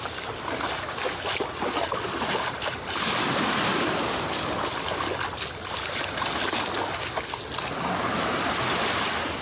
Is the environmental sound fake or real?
real